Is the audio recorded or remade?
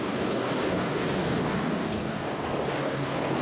remade